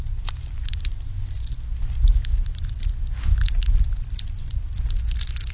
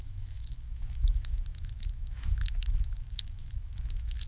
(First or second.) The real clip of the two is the first